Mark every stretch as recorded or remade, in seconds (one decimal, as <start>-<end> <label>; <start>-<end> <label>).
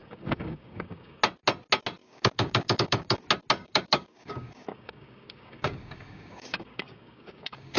0.0-1.2 remade; 1.2-2.0 recorded; 2.0-3.2 remade; 3.2-3.6 recorded; 3.6-7.8 remade